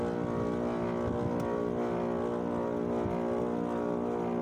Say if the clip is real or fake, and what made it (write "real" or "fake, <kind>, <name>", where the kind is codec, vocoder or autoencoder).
real